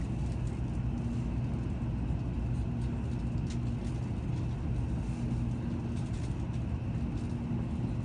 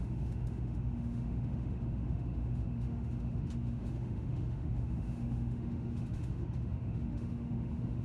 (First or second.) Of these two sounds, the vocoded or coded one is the second